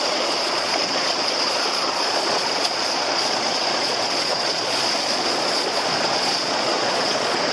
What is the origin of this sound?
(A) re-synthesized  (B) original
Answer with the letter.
A